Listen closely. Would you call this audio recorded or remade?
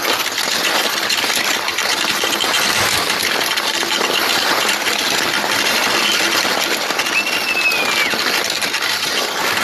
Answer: recorded